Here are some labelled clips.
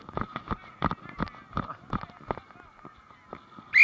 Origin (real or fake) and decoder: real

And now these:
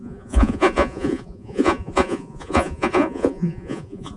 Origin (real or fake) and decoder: fake, vocoder, Vocos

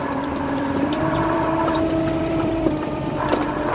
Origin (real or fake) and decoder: fake, vocoder, BigVGAN v2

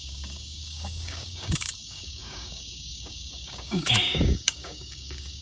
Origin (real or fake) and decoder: fake, codec, DAC